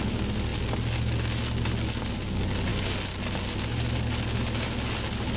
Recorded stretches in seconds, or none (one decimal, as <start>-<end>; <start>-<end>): 0.0-5.4

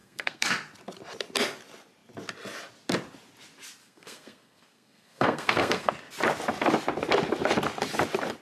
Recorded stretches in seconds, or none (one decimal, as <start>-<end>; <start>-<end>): 0.5-3.8; 5.9-8.4

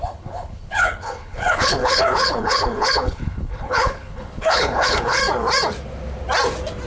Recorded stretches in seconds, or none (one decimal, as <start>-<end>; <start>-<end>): 5.2-6.9